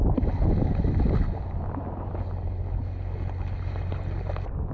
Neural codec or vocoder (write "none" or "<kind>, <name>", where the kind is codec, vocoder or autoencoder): none